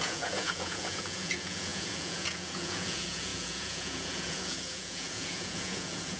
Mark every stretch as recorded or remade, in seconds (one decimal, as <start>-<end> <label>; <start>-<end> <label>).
0.0-6.2 remade